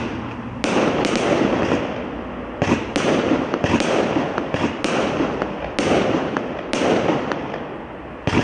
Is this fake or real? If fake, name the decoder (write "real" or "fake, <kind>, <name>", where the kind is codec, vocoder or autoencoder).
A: real